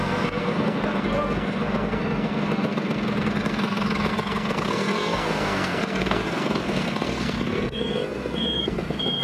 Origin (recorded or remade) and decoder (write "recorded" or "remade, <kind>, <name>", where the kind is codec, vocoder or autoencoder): remade, codec, SNAC